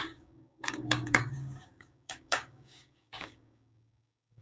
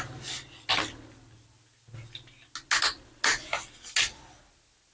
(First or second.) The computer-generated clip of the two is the first